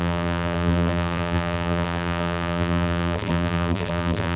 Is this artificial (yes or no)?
yes